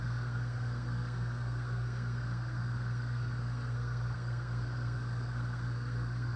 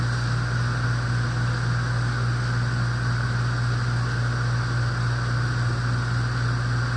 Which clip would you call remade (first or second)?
first